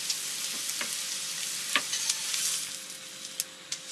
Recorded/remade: recorded